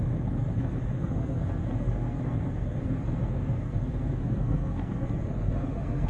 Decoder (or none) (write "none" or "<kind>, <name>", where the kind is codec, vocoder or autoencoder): codec, SNAC